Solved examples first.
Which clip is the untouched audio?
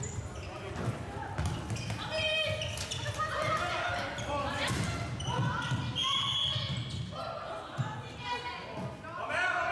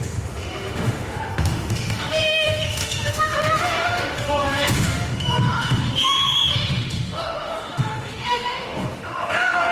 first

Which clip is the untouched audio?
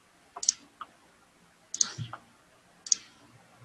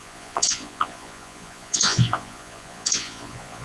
first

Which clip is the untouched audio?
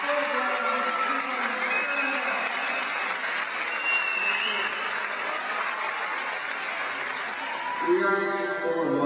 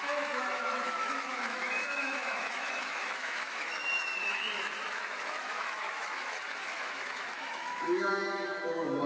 first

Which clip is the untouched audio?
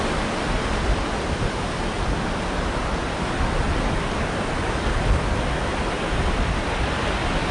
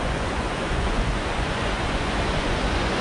first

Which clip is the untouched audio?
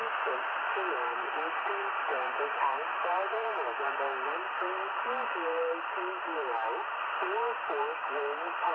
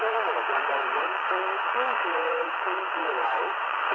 first